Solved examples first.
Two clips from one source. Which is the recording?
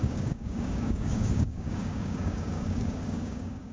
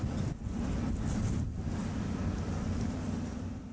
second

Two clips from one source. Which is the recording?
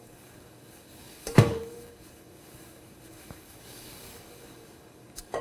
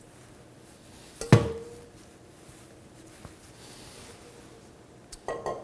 second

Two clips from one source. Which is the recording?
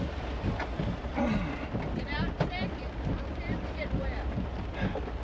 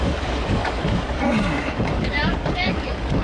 first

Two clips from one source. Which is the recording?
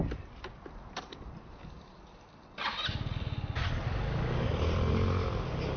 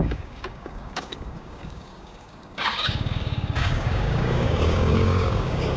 first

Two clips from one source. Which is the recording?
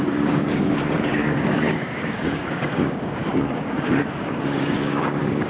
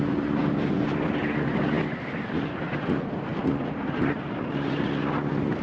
second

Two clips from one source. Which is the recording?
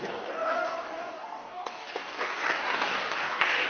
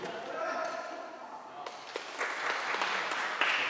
second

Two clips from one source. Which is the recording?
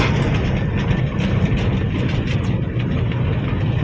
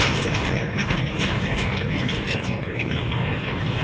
first